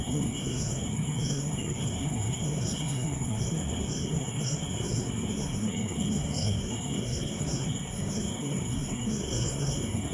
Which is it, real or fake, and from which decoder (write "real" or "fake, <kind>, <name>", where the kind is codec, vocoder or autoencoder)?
fake, codec, SNAC